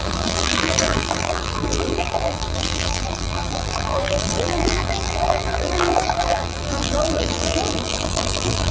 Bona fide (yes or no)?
no